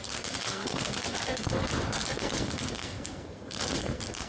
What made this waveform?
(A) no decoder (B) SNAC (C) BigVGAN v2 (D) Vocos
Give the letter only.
B